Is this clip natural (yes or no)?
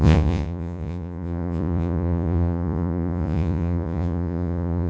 no